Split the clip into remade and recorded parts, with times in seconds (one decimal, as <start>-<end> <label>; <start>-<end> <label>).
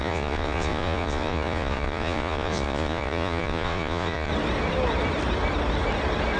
0.0-4.3 remade; 4.3-6.4 recorded